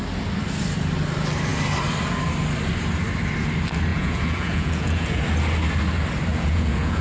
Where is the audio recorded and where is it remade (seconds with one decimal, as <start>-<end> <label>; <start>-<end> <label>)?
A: 0.0-3.9 recorded; 3.9-5.2 remade; 5.2-6.3 recorded; 6.3-7.0 remade